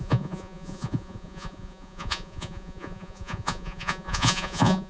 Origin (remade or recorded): remade